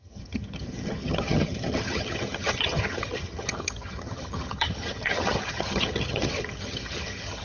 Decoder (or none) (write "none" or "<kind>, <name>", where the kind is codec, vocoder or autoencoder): vocoder, HiFi-GAN